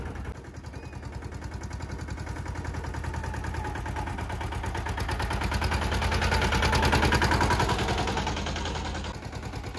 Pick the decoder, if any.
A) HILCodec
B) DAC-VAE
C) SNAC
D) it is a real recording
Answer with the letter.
D